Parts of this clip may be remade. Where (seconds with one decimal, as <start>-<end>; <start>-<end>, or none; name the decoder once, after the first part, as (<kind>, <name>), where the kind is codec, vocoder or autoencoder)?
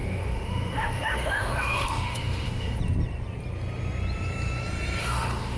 0.0-2.8 (autoencoder, DAC-VAE); 5.0-5.6